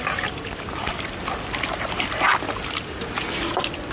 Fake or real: real